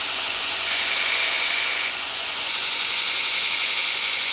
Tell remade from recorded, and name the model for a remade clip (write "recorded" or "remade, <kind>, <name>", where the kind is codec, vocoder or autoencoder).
remade, vocoder, Vocos